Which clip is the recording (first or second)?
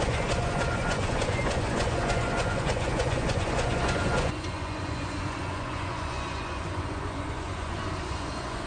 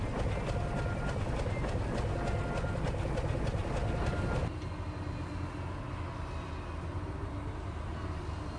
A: second